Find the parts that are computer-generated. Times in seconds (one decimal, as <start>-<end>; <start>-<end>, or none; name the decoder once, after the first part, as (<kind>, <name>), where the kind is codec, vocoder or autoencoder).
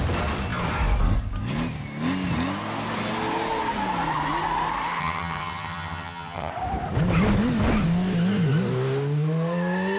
5.0-6.5 (vocoder, HiFi-GAN)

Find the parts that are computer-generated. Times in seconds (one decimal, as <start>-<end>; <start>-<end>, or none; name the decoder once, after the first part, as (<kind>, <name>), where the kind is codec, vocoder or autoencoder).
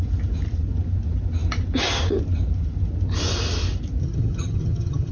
4.0-5.1 (vocoder, HiFi-GAN)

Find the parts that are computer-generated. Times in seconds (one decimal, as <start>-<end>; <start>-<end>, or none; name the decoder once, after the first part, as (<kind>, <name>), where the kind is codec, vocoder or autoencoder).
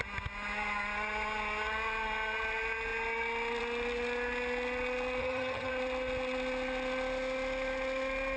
5.2-5.7 (vocoder, HiFi-GAN)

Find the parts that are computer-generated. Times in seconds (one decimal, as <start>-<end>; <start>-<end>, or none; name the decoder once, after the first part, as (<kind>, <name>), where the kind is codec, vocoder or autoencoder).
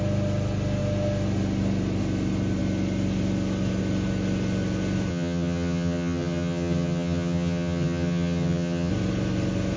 5.1-8.9 (vocoder, HiFi-GAN)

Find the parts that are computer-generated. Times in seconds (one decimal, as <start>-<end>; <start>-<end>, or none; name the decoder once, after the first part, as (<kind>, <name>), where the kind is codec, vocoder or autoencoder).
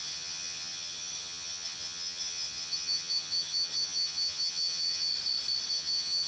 0.0-5.1 (vocoder, HiFi-GAN); 5.7-6.3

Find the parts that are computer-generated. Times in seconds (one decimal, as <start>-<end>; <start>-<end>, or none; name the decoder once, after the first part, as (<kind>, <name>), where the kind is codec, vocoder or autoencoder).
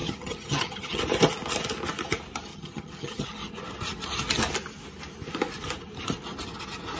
0.0-1.0 (vocoder, HiFi-GAN); 2.5-3.5